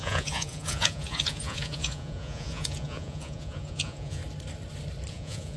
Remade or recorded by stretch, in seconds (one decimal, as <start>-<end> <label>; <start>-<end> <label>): 0.0-4.2 remade; 4.2-5.1 recorded; 5.1-5.6 remade